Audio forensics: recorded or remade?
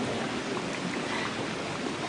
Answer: recorded